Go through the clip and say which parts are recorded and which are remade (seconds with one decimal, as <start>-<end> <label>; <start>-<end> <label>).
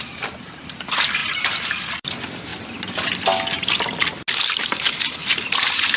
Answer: 0.0-2.5 remade; 2.5-4.6 recorded; 4.6-6.0 remade